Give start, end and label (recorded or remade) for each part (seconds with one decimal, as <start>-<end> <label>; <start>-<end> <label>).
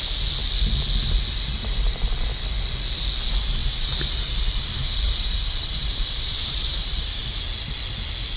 0.0-3.6 recorded; 3.6-7.2 remade; 7.2-8.4 recorded